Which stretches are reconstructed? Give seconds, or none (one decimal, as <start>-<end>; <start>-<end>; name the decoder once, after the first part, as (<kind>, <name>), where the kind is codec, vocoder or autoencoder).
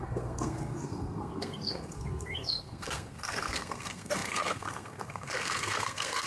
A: 0.0-6.3 (codec, SNAC)